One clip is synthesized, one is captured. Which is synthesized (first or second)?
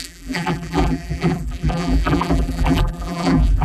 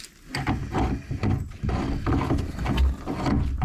first